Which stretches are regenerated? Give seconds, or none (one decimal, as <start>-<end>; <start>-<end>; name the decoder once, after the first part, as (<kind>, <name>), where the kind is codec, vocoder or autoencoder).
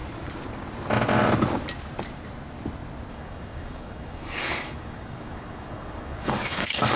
3.1-7.0 (codec, DAC)